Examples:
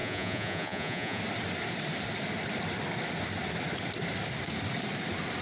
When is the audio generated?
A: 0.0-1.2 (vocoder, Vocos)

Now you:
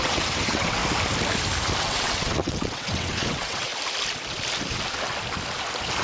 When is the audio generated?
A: 0.0-0.8 (vocoder, WaveNeXt); 1.8-3.7

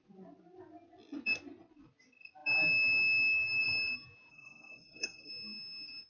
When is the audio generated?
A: 4.3-5.3 (codec, SNAC)

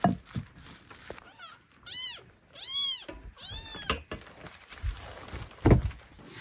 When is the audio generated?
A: none

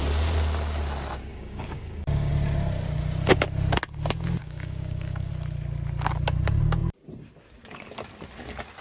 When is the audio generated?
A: 1.3-2.3 (codec, DAC); 4.4-5.3

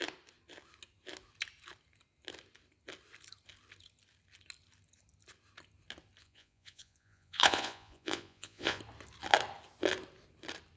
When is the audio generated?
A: 6.2-8.8 (vocoder, Vocos)

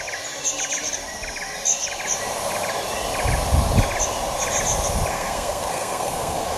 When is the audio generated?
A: 5.1-6.6 (codec, SNAC)